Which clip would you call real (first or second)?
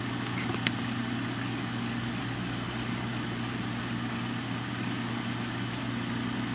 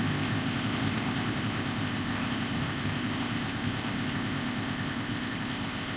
first